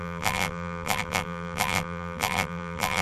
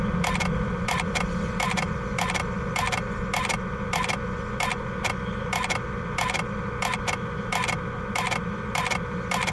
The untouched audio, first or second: second